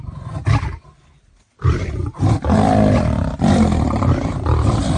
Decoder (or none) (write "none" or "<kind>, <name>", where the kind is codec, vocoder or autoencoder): vocoder, BigVGAN v2